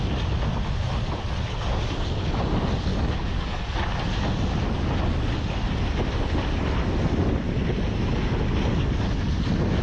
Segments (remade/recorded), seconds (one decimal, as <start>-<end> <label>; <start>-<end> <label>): 0.0-2.9 recorded; 2.9-3.6 remade; 3.6-9.8 recorded